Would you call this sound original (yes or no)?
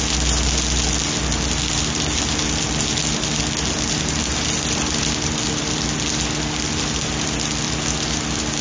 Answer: yes